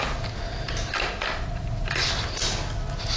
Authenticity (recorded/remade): recorded